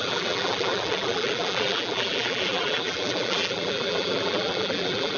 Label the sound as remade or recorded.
remade